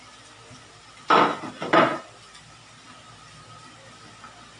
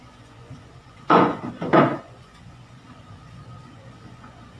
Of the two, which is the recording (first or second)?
first